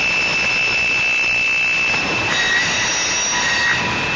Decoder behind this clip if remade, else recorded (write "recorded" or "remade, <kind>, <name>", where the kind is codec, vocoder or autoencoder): recorded